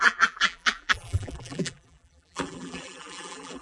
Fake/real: fake